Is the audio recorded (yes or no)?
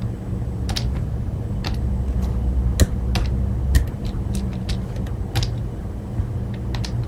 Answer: yes